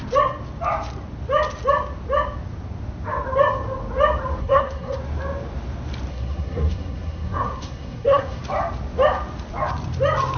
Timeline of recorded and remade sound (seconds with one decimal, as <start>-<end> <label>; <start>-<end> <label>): 0.0-4.4 recorded; 4.4-5.0 remade; 5.0-6.1 recorded; 6.1-8.4 remade; 8.4-10.4 recorded

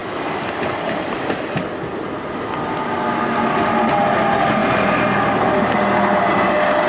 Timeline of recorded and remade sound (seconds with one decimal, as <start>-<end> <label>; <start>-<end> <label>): 0.0-6.9 recorded

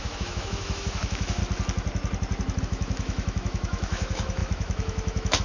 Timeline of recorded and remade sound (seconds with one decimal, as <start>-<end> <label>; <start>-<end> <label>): 0.0-1.4 remade; 1.4-2.6 recorded; 2.6-5.4 remade

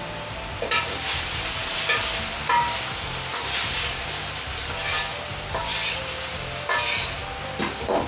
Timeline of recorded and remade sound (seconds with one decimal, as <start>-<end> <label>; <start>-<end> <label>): 0.0-8.1 recorded

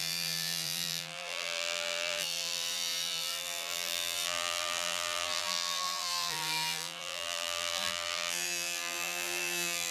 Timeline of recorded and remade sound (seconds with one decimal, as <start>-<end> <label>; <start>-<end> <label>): 0.0-9.9 remade